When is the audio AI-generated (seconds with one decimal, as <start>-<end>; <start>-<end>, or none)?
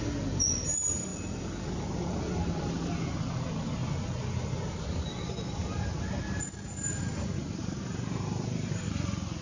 7.6-8.9